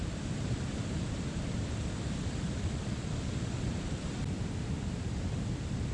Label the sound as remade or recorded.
remade